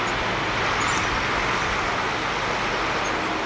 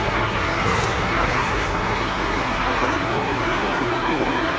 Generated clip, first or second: second